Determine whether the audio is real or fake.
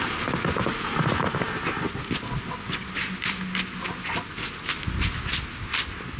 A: real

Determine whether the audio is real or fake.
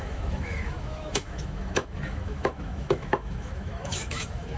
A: fake